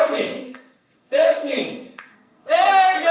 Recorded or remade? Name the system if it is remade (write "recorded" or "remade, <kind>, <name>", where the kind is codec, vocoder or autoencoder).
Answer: remade, codec, SNAC